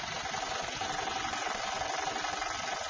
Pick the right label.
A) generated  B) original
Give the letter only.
B